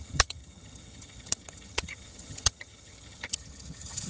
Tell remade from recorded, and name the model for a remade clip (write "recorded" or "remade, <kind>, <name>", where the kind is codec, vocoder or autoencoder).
remade, vocoder, HiFi-GAN